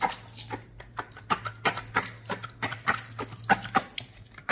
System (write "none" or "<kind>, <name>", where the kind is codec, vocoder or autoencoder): none